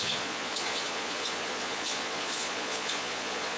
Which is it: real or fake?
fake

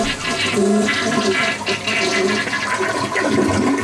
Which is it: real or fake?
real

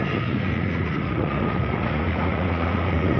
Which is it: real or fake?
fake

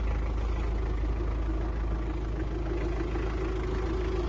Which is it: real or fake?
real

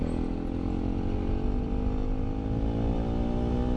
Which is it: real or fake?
real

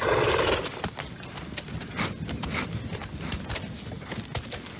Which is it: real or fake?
real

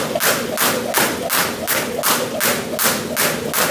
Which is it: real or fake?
real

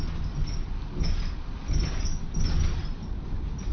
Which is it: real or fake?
real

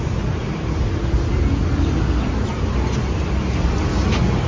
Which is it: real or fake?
real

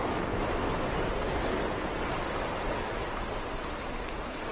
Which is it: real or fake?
real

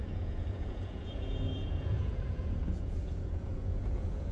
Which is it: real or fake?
fake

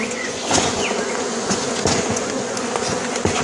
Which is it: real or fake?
fake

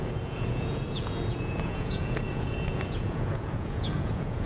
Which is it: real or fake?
fake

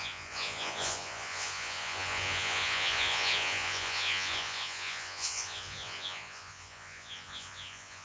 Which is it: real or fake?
fake